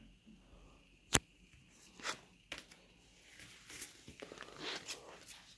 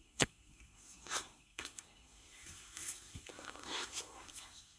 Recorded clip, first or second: first